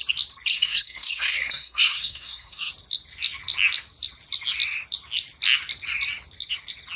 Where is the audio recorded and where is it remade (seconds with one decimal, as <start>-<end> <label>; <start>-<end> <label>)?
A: 0.0-0.5 recorded; 0.5-2.7 remade; 2.7-7.0 recorded